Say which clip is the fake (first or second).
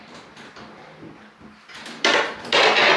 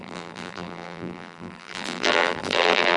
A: second